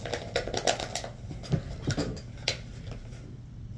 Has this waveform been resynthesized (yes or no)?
no